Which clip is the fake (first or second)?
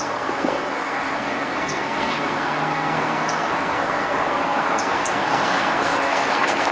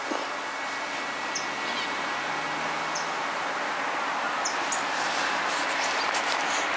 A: first